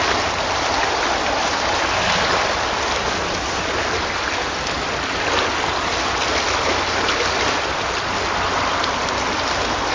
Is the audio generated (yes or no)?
no